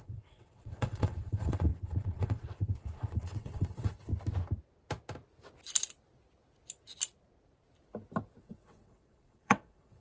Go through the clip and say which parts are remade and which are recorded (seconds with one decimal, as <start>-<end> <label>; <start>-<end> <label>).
0.0-4.1 remade; 4.1-8.4 recorded; 8.4-10.0 remade

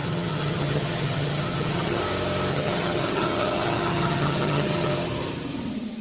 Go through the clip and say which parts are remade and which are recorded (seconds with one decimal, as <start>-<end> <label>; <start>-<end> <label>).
0.0-2.0 remade; 2.0-2.5 recorded; 2.5-4.9 remade; 4.9-6.0 recorded

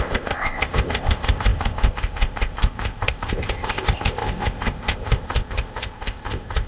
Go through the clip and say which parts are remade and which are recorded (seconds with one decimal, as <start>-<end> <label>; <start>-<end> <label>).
0.0-6.7 remade

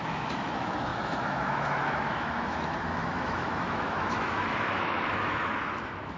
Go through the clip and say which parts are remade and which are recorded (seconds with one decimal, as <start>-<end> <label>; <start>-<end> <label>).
0.0-6.2 remade

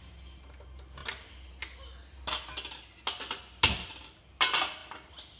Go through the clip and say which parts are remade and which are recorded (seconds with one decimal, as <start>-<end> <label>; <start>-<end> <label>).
0.0-5.4 recorded